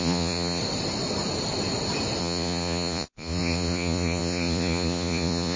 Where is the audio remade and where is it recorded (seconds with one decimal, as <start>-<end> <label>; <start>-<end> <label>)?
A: 0.0-0.6 remade; 0.6-2.2 recorded; 2.2-5.6 remade